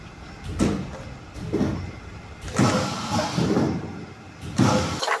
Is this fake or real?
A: real